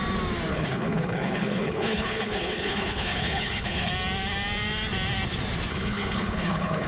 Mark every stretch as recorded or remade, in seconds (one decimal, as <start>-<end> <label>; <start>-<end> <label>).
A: 0.0-0.5 recorded; 0.5-3.9 remade; 3.9-5.7 recorded; 5.7-6.9 remade